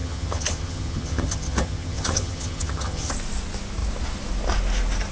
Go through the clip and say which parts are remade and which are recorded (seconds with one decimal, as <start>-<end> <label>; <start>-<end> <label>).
0.0-3.1 remade; 3.1-5.1 recorded